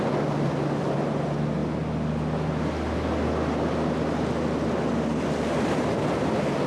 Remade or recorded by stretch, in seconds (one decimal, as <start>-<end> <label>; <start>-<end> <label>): 0.0-6.7 recorded